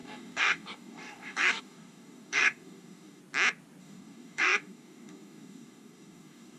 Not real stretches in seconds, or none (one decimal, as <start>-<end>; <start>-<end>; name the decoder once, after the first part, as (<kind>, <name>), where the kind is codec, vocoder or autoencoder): 0.0-3.2 (codec, DAC); 3.8-6.6